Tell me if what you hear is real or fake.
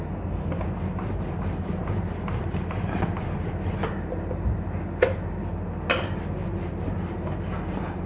real